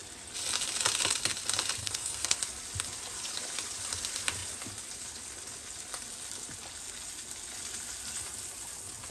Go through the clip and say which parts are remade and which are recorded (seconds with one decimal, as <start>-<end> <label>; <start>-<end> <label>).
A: 0.0-1.8 recorded; 1.8-2.4 remade; 2.4-9.1 recorded